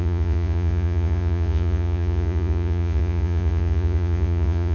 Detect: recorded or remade remade